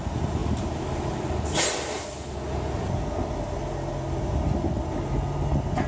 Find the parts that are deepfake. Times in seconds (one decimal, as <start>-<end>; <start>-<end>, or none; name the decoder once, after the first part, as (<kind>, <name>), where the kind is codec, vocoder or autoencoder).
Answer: none